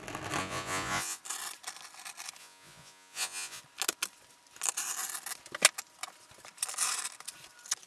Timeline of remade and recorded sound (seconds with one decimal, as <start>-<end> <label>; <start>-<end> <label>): 0.0-0.4 recorded; 0.4-1.2 remade; 1.2-2.4 recorded; 2.4-3.6 remade; 3.6-7.9 recorded